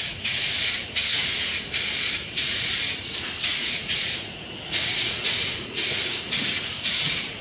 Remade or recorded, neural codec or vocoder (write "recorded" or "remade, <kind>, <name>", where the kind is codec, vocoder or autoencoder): remade, vocoder, Vocos